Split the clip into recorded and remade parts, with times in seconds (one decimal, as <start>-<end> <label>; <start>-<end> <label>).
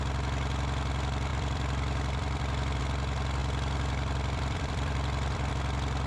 0.0-1.3 recorded; 1.3-2.8 remade; 2.8-3.4 recorded; 3.4-5.5 remade; 5.5-6.1 recorded